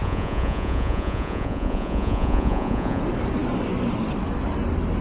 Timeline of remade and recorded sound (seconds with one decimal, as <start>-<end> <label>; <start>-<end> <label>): 0.0-3.0 remade; 3.0-5.0 recorded